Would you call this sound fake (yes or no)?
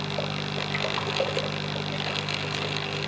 no